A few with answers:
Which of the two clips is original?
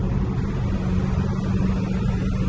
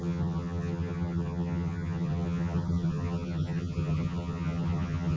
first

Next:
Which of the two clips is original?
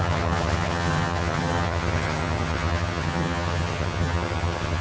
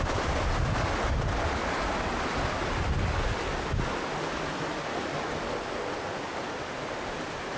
second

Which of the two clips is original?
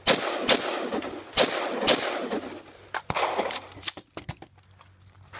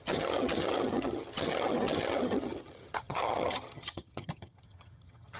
first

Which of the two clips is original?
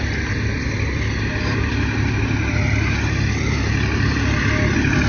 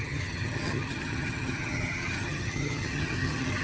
first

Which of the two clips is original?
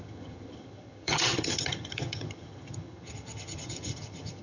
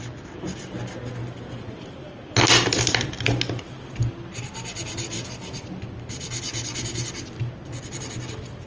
second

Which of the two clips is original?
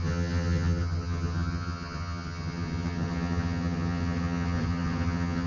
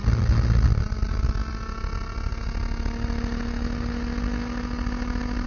second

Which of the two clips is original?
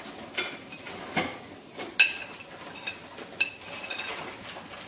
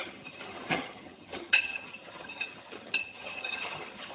first